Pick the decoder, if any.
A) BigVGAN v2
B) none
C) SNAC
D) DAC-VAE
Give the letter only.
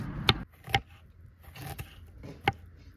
B